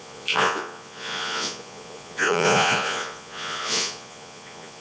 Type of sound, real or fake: fake